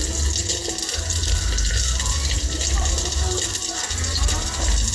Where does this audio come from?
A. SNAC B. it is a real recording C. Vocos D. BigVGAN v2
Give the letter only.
B